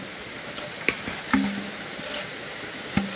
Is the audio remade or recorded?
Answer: recorded